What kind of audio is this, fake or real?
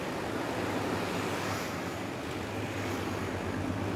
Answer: real